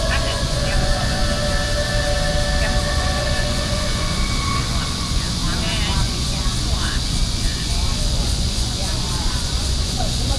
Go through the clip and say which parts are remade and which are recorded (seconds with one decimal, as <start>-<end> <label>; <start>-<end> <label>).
0.0-1.2 remade; 1.2-2.9 recorded; 2.9-5.4 remade; 5.4-6.0 recorded; 6.0-10.4 remade